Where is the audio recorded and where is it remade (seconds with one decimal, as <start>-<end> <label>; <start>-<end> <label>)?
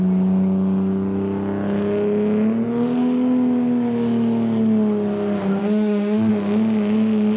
0.0-5.6 recorded; 5.6-6.3 remade; 6.3-7.4 recorded